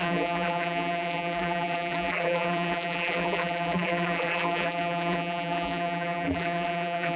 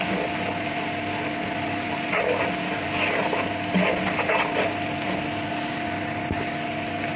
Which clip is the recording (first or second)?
second